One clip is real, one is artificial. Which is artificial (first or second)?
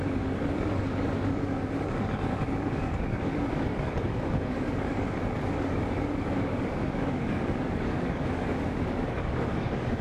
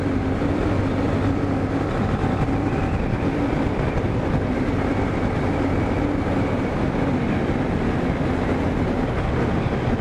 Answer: first